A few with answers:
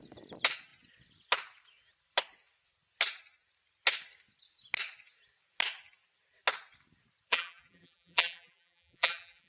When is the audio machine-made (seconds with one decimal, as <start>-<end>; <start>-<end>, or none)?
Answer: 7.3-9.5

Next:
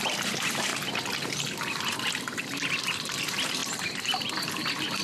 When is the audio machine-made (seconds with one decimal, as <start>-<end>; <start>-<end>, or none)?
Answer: none

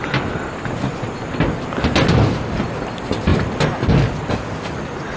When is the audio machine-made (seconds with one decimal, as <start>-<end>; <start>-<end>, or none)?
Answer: none

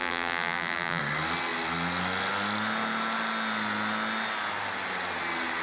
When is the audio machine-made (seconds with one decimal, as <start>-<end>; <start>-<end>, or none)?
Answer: 0.0-1.0